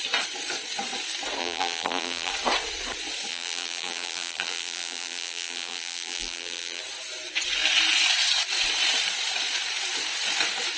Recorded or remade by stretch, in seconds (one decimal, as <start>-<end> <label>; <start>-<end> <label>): 0.0-1.4 recorded; 1.4-2.3 remade; 2.3-3.3 recorded; 3.3-6.8 remade; 6.8-10.8 recorded